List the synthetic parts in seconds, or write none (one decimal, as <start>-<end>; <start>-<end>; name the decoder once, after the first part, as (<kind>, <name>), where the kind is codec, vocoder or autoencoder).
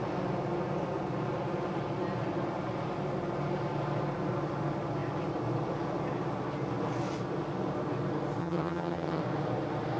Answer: 8.4-9.2 (vocoder, HiFi-GAN)